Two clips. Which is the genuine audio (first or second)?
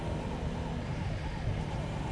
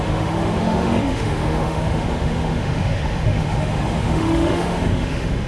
first